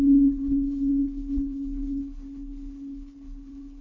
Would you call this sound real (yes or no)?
no